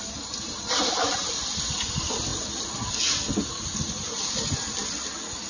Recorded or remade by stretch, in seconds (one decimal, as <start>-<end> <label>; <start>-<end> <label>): 0.0-5.5 recorded